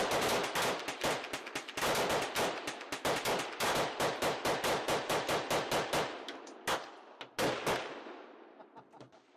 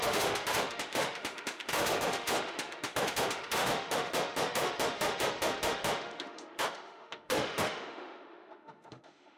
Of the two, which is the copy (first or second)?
second